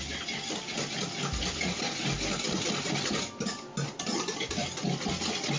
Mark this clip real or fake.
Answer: real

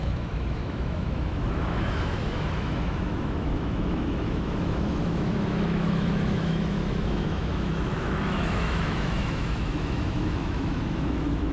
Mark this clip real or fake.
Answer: fake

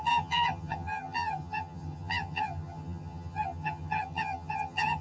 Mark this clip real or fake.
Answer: fake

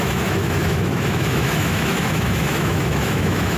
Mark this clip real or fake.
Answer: fake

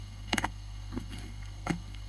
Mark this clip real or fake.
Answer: fake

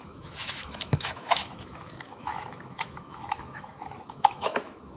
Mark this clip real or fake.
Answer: fake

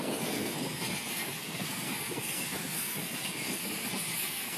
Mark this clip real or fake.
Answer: fake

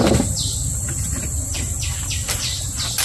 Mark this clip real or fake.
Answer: fake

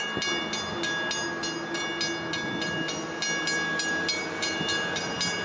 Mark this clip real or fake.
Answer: real